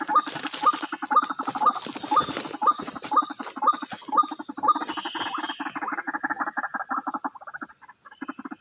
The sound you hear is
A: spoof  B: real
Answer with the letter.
B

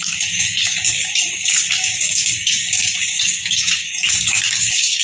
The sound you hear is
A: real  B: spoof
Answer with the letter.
B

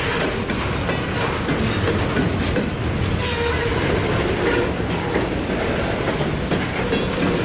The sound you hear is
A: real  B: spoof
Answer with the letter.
A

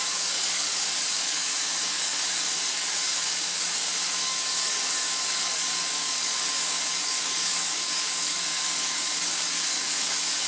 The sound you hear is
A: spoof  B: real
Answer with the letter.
A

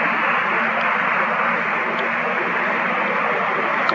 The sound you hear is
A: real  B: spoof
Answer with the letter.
A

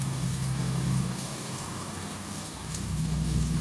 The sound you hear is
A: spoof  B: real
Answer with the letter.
A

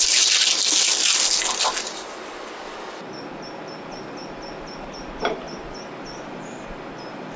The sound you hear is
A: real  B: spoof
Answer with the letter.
A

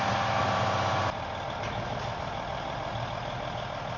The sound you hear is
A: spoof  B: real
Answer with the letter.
B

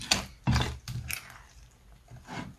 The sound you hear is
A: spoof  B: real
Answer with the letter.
B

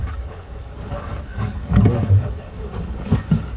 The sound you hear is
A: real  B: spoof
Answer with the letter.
B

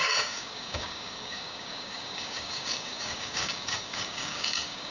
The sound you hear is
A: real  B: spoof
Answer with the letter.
B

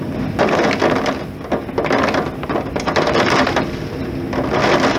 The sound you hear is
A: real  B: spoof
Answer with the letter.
A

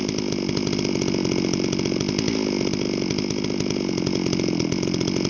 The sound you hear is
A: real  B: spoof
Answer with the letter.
A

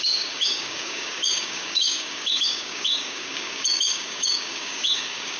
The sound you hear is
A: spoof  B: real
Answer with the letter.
A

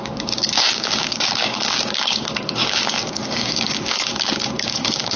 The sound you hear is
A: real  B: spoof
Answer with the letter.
B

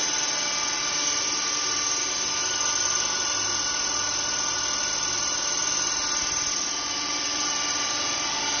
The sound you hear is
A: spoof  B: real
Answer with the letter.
B